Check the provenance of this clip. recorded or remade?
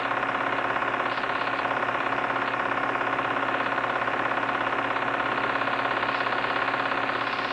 recorded